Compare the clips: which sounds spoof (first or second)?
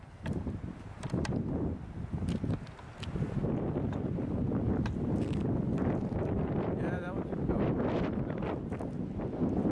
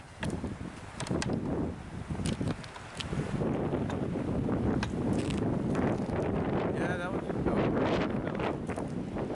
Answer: first